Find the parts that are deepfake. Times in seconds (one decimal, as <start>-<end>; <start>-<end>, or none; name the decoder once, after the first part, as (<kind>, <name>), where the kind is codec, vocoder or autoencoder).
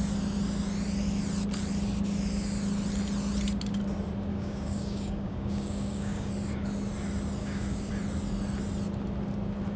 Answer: 4.3-6.3 (codec, DAC); 7.4-7.9